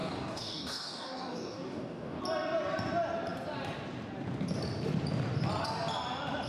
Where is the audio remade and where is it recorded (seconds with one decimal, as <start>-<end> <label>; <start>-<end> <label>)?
0.0-2.2 remade; 2.2-6.5 recorded